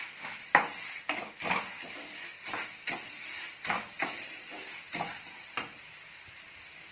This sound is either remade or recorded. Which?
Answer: recorded